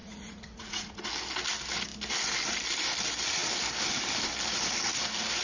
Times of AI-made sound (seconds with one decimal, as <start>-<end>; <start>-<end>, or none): 0.0-1.1